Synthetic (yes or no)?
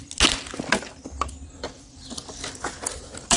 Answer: no